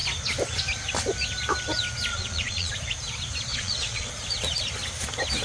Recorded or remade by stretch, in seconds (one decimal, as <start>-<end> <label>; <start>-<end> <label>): 0.0-2.1 recorded; 2.1-2.7 remade; 2.7-3.5 recorded; 3.5-4.1 remade; 4.1-5.4 recorded